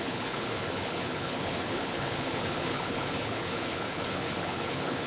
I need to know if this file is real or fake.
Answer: fake